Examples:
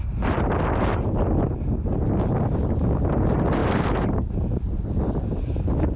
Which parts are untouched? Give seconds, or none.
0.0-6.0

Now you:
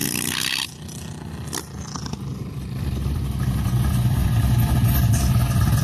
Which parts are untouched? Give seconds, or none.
1.7-2.3

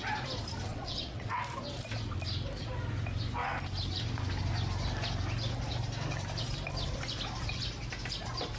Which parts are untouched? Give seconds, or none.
0.0-0.7; 1.4-8.6

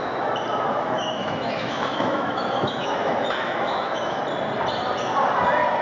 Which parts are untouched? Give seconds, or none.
0.0-0.7; 4.2-5.8